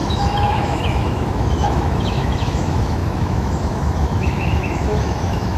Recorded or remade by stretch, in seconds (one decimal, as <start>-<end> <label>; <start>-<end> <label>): 0.0-5.6 remade